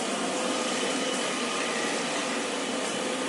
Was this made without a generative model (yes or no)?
yes